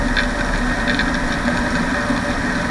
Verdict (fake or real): real